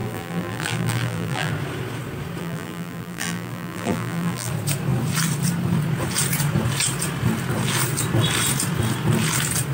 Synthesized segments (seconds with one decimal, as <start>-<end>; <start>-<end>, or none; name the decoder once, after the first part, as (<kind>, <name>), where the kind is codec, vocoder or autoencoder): 0.0-1.5 (vocoder, BigVGAN v2); 2.4-4.5